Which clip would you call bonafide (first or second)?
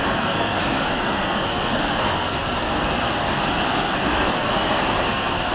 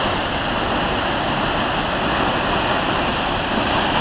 second